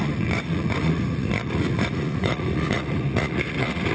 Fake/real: fake